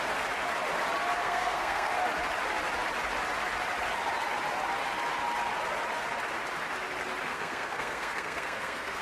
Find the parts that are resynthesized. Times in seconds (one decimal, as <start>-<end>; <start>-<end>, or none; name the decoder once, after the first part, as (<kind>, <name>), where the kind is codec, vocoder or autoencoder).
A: 1.2-1.9 (codec, SNAC); 7.3-9.0